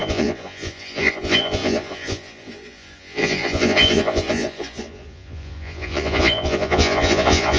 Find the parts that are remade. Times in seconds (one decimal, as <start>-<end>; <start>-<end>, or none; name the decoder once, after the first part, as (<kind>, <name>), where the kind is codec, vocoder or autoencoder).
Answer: 0.0-7.6 (vocoder, Vocos)